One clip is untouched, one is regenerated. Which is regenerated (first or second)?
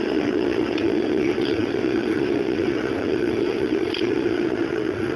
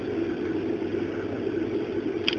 first